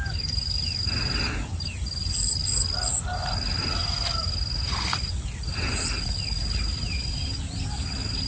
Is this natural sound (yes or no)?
yes